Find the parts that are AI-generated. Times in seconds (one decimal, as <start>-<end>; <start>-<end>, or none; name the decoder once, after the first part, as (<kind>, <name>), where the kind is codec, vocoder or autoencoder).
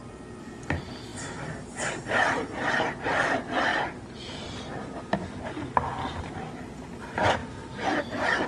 0.0-3.7 (vocoder, BigVGAN v2); 4.3-7.4; 8.0-8.5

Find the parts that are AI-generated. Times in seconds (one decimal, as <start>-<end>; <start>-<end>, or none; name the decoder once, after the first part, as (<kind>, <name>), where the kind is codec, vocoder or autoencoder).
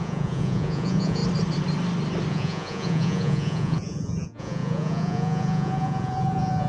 0.0-1.2 (vocoder, Vocos); 2.3-6.7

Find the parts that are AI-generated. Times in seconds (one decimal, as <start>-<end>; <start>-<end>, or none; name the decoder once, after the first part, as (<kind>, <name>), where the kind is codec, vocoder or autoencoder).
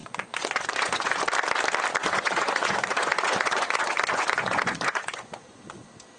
0.0-1.2 (vocoder, Vocos); 2.0-5.7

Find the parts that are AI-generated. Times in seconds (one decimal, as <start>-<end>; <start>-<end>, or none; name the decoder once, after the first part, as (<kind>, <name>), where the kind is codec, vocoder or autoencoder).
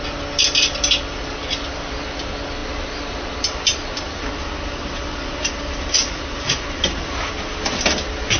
none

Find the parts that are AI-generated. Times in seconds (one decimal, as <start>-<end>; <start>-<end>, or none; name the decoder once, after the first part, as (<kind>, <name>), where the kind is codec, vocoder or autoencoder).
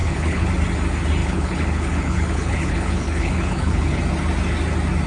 0.0-0.5 (codec, HILCodec); 1.2-4.0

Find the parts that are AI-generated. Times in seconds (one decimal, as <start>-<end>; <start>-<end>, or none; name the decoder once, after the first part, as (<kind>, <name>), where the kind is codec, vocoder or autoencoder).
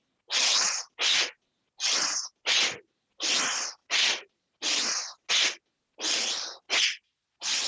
none